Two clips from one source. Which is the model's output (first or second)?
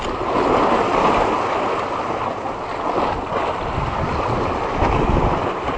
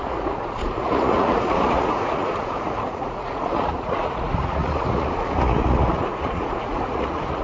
second